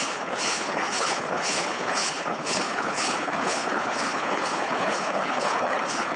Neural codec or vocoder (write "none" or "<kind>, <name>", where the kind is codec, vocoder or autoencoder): codec, HILCodec